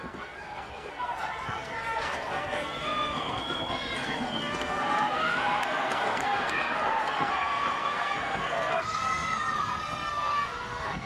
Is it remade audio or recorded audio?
remade